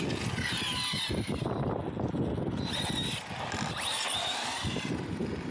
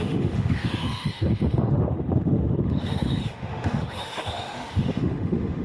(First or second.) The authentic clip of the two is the first